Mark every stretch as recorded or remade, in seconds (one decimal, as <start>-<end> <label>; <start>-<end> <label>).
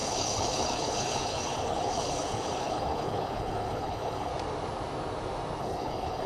0.0-4.3 remade; 4.3-5.6 recorded; 5.6-6.3 remade